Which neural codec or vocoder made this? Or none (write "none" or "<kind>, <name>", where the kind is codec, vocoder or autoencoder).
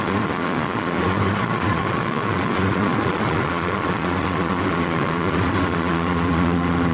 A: vocoder, Vocos